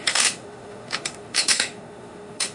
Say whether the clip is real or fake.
fake